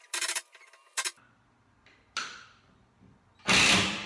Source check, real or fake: real